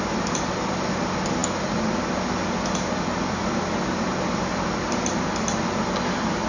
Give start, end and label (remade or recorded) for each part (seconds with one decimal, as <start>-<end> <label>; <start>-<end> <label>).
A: 0.0-6.5 recorded